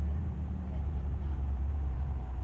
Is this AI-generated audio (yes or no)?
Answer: yes